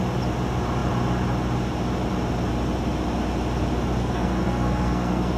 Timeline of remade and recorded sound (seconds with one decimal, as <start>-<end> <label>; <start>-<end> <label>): 0.0-4.0 recorded; 4.0-5.4 remade